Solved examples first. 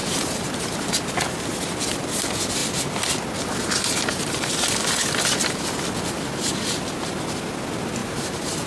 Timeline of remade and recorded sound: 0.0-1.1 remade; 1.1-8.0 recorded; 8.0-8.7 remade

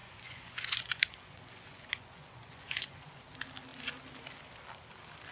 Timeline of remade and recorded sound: 0.0-3.2 remade; 3.2-5.3 recorded

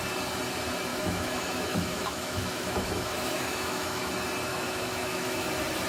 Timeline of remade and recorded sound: 0.0-0.9 recorded; 0.9-4.1 remade; 4.1-4.5 recorded; 4.5-5.5 remade; 5.5-5.9 recorded

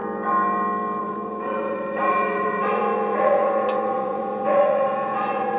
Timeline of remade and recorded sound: 0.0-1.0 recorded; 1.0-5.6 remade